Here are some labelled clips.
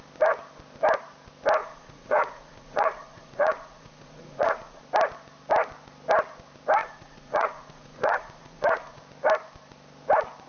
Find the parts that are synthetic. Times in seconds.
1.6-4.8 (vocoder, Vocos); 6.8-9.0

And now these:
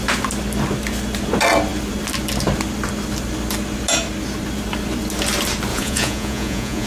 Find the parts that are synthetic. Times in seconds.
5.7-6.9 (vocoder, Vocos)

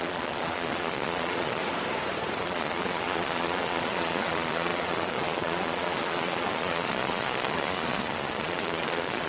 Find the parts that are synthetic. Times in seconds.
0.0-1.6 (vocoder, Vocos); 2.4-9.3

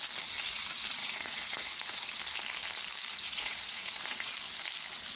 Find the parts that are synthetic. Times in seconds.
1.0-2.1 (vocoder, Vocos); 3.1-4.3

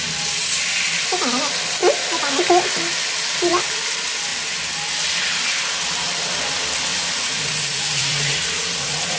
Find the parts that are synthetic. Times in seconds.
6.9-9.2 (vocoder, Vocos)

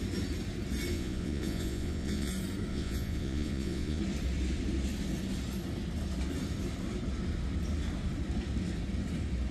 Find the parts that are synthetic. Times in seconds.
0.9-2.3 (vocoder, Vocos); 2.7-4.0

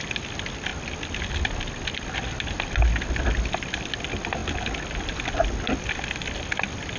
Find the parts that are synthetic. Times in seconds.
none